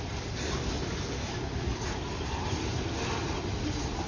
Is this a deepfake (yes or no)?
no